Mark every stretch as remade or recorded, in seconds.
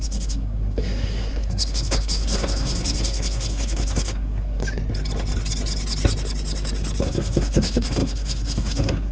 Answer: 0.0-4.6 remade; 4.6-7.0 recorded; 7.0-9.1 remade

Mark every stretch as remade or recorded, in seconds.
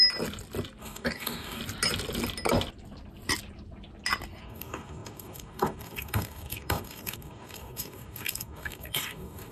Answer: 0.0-0.8 recorded; 0.8-1.6 remade; 1.6-4.4 recorded; 4.4-9.5 remade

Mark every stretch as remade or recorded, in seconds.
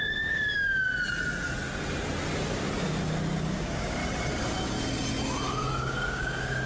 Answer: 0.0-0.9 remade; 0.9-3.4 recorded; 3.4-4.0 remade; 4.0-5.7 recorded; 5.7-6.7 remade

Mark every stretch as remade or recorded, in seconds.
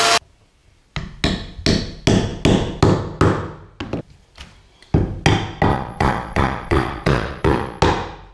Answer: 0.0-5.7 recorded; 5.7-7.8 remade; 7.8-8.3 recorded